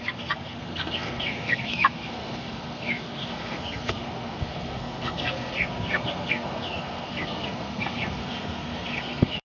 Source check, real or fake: fake